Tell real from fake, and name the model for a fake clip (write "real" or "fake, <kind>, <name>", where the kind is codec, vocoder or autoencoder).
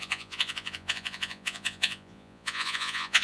fake, vocoder, Vocos